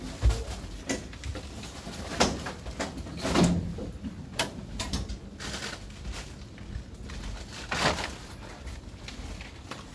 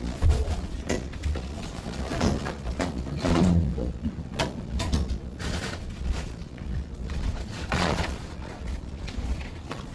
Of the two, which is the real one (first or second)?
first